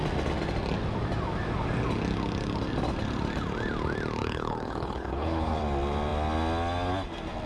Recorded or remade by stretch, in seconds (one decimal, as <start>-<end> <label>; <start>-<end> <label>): 0.0-4.2 recorded; 4.2-5.6 remade; 5.6-7.5 recorded